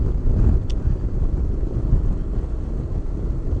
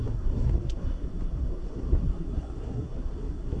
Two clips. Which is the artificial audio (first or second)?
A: second